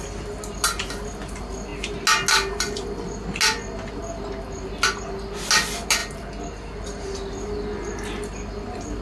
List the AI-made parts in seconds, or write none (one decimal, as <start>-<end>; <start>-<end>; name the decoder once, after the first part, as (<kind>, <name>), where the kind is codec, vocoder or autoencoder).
none